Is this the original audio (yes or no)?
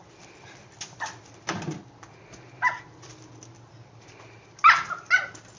yes